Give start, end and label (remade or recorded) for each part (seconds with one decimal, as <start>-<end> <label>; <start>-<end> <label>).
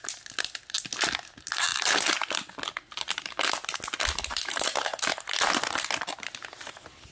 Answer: 0.0-7.1 recorded